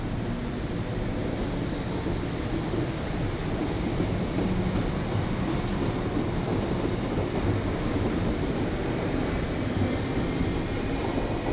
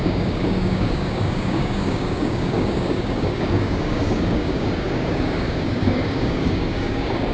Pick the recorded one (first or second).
first